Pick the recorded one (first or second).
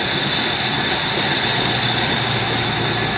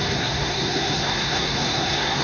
first